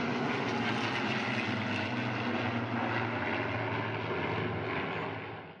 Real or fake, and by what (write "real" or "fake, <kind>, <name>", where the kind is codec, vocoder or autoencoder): real